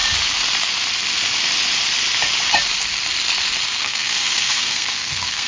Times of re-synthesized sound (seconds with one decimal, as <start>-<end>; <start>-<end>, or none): 3.8-5.5